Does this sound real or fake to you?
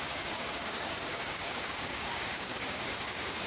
fake